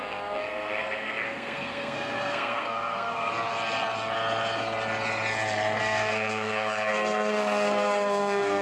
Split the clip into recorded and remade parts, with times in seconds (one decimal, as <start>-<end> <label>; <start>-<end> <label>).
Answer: 0.0-3.3 remade; 3.3-5.8 recorded; 5.8-8.6 remade